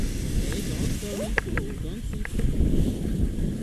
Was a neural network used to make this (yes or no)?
no